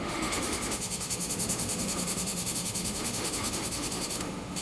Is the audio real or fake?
fake